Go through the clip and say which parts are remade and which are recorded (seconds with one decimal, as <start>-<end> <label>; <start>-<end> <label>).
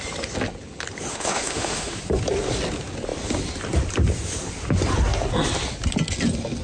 0.0-1.1 recorded; 1.1-2.0 remade; 2.0-6.6 recorded